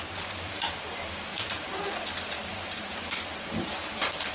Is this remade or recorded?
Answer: remade